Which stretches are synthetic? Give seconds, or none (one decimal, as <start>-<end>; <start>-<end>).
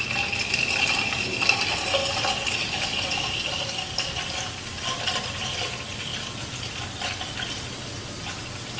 none